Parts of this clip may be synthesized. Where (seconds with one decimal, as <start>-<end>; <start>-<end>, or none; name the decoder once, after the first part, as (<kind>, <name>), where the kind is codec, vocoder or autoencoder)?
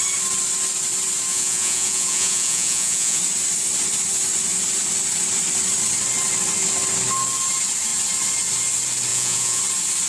1.3-3.2 (vocoder, Vocos); 9.1-9.6